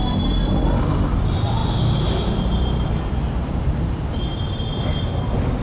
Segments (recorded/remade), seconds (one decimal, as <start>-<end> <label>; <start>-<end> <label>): 0.0-5.6 recorded